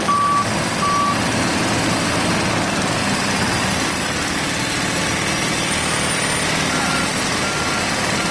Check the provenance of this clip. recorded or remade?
recorded